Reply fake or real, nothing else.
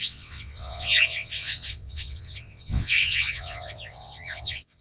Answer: fake